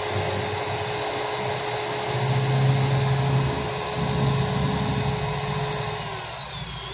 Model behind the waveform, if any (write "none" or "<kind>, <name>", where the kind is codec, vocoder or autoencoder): none